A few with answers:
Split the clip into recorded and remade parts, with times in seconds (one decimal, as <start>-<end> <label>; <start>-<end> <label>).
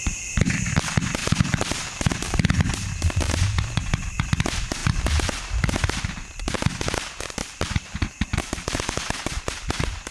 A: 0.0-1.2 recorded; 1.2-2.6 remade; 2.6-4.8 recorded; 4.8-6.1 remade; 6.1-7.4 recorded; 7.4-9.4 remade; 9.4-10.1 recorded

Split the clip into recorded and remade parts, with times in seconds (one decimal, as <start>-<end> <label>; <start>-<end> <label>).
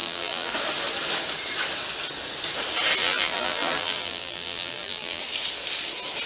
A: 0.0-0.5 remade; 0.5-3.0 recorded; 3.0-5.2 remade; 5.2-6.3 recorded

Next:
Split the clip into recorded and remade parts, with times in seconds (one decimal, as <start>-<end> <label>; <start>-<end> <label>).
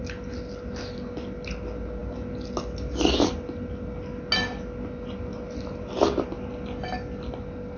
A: 0.0-7.8 recorded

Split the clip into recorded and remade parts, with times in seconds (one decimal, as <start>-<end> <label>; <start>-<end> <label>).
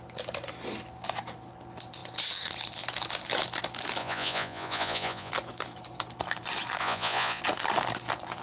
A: 0.0-4.0 recorded; 4.0-5.3 remade; 5.3-6.8 recorded; 6.8-7.4 remade; 7.4-8.4 recorded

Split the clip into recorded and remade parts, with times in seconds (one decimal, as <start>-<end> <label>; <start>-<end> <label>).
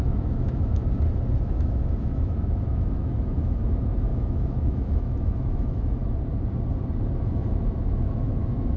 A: 0.0-0.8 remade; 0.8-1.4 recorded; 1.4-6.0 remade; 6.0-7.2 recorded; 7.2-8.8 remade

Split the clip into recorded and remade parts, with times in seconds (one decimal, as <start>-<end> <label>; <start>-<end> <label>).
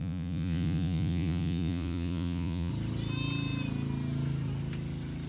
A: 0.0-2.7 remade; 2.7-5.3 recorded